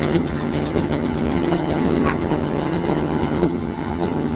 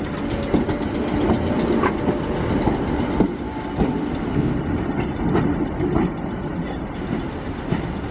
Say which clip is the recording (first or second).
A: second